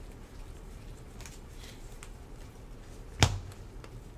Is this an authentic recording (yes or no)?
yes